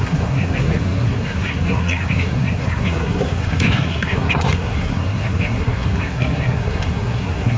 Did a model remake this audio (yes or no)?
yes